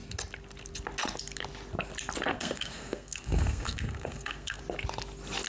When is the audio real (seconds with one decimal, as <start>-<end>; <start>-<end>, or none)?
0.0-2.3; 4.6-5.5